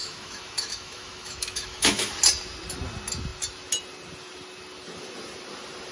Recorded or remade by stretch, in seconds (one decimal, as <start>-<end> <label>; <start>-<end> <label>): 0.0-2.1 remade; 2.1-5.9 recorded